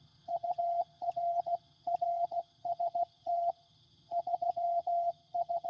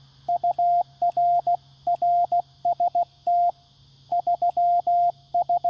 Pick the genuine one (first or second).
second